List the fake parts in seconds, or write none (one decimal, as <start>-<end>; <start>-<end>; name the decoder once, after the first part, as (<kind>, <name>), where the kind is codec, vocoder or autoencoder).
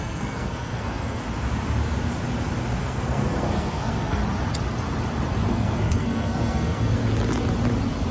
0.0-1.2 (codec, SNAC); 2.8-4.2; 5.5-7.0